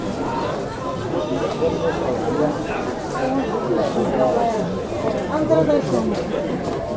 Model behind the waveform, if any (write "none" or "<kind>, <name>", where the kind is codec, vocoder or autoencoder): none